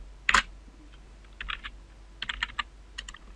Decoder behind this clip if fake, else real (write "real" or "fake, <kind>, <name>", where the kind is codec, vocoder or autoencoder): real